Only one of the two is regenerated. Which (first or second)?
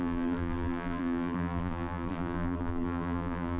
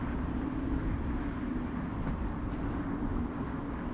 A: first